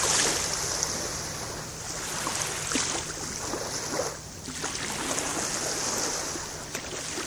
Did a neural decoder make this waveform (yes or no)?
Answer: no